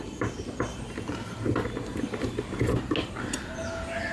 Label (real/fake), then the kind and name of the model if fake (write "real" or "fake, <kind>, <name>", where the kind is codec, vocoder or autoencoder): real